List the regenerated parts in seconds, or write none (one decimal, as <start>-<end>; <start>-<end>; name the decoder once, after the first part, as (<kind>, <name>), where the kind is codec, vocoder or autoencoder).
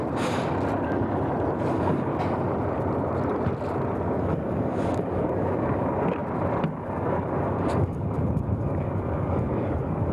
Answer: 1.7-2.1 (codec, DAC); 4.2-6.2; 6.7-10.1